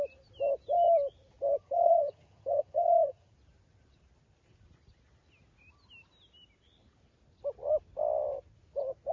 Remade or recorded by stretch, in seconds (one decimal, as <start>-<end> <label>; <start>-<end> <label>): 0.0-1.6 recorded; 1.6-3.3 remade; 3.3-9.1 recorded